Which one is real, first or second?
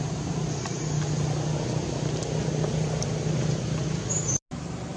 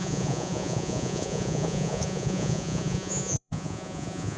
first